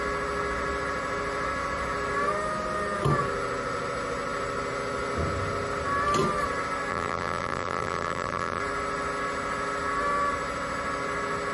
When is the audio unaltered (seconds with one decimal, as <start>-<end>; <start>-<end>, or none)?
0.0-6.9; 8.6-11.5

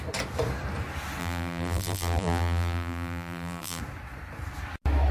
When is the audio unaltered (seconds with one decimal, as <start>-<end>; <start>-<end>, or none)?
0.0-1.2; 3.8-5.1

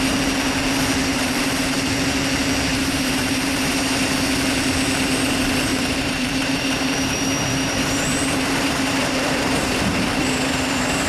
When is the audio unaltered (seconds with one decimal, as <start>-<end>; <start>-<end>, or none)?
0.0-1.1; 1.9-2.7; 3.9-5.7

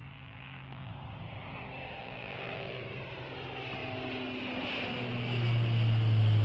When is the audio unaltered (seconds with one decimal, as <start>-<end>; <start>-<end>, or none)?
0.9-2.0; 2.8-6.4

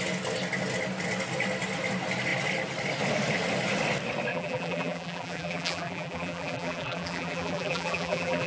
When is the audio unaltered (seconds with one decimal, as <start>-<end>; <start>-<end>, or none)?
0.0-4.3

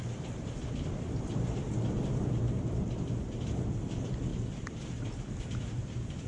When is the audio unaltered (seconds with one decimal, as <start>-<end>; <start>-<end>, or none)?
0.0-1.6; 2.8-4.3

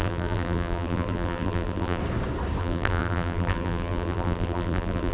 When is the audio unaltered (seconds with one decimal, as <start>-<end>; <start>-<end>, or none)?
2.0-2.6